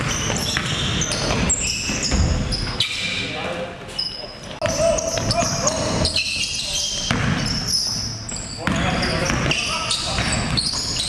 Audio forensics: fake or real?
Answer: real